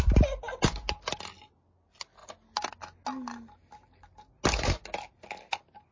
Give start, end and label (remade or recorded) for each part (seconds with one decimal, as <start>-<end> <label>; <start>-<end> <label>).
0.0-5.9 recorded